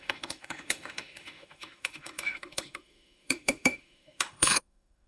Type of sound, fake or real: fake